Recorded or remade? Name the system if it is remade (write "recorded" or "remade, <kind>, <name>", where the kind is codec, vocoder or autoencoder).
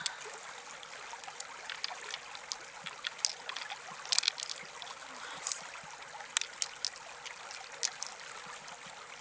recorded